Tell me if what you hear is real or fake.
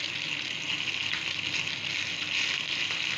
real